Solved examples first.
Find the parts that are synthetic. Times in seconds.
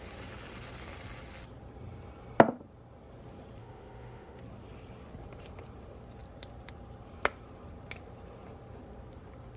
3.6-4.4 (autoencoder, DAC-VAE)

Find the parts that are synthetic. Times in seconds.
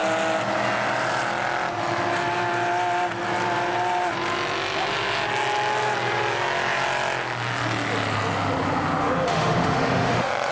9.0-10.5 (autoencoder, DAC-VAE)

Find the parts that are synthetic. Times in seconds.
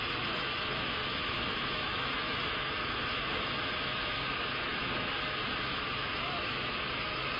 0.0-7.4 (autoencoder, DAC-VAE)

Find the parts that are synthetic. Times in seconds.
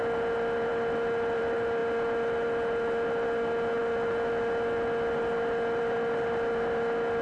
none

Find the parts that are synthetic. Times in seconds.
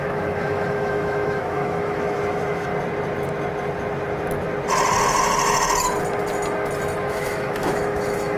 0.0-2.7 (autoencoder, DAC-VAE); 7.1-8.4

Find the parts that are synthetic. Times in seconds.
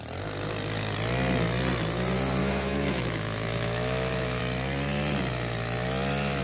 2.4-4.4 (autoencoder, DAC-VAE)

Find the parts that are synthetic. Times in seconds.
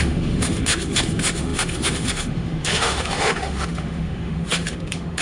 0.0-5.2 (autoencoder, DAC-VAE)